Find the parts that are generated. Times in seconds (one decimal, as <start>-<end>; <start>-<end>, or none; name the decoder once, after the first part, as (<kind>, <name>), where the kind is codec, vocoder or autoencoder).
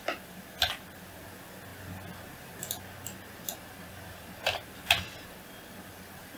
none